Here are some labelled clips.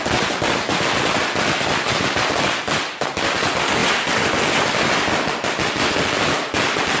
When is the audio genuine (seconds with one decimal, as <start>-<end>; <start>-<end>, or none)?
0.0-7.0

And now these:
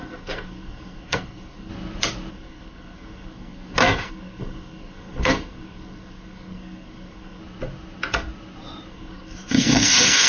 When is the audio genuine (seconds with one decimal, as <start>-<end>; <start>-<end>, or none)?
1.7-2.3; 7.4-8.9

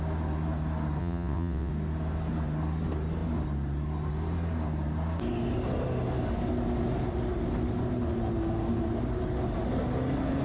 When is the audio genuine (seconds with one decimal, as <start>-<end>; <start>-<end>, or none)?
0.0-1.0; 1.7-10.4

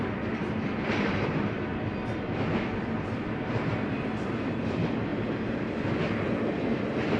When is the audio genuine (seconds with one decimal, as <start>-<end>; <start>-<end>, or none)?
0.0-7.2